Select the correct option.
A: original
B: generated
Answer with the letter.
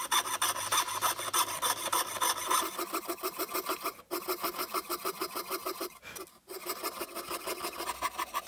A